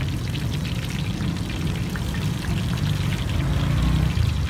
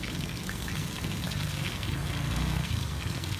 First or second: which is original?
first